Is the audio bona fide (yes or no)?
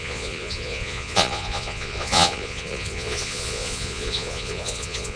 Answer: no